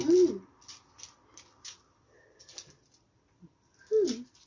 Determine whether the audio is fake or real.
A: real